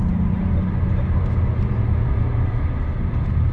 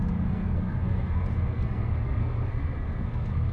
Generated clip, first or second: second